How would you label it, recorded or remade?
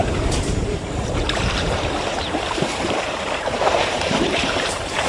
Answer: remade